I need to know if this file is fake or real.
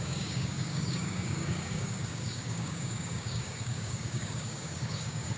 fake